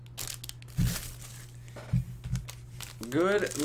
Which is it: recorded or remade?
recorded